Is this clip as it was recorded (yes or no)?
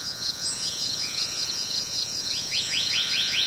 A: no